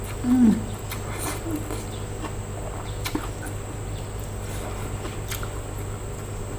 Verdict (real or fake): real